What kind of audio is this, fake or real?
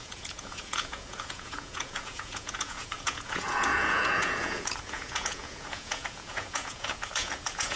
fake